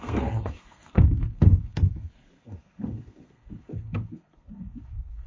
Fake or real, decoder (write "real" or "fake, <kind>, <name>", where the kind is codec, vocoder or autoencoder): fake, codec, SNAC